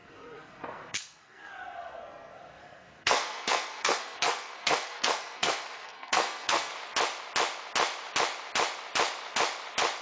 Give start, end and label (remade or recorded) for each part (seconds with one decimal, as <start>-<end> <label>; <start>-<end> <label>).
0.0-6.7 remade; 6.7-10.0 recorded